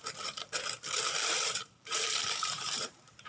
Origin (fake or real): fake